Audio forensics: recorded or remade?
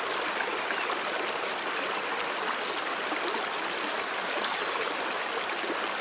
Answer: recorded